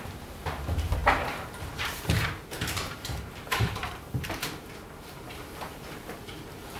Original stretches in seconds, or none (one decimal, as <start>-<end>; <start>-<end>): none